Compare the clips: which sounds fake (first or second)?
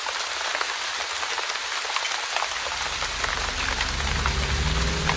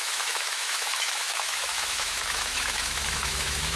second